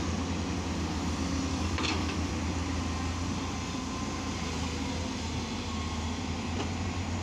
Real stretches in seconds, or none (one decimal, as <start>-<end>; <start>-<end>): 0.0-1.5; 2.3-7.2